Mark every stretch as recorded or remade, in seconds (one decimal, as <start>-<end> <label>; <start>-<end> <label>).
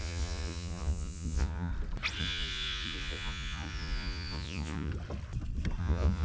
0.0-1.7 remade; 1.7-2.2 recorded; 2.2-4.9 remade; 4.9-5.8 recorded; 5.8-6.2 remade